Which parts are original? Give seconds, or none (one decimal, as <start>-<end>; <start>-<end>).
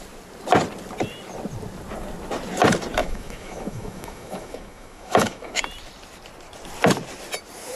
0.0-3.0; 5.6-7.8